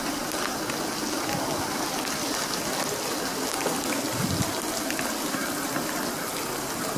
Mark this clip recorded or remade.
recorded